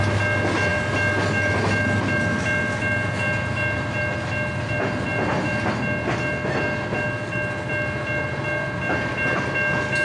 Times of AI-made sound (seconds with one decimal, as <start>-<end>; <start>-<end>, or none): none